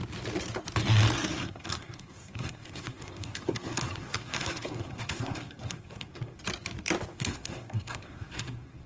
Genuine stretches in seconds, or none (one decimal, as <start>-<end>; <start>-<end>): 0.0-1.3; 6.4-7.1